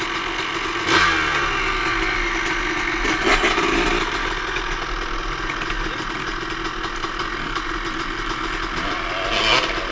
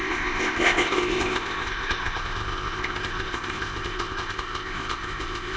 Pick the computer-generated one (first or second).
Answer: second